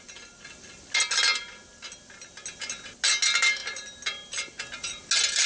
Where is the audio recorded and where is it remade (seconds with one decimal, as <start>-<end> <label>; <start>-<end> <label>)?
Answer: 0.0-5.5 recorded